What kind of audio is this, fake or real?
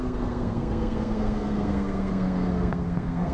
fake